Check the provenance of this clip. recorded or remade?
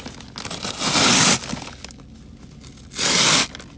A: recorded